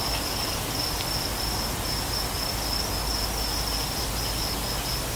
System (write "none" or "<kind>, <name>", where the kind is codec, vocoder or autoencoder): none